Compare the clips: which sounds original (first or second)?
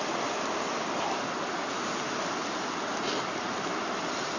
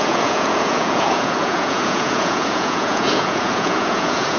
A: first